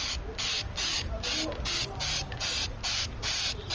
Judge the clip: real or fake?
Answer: real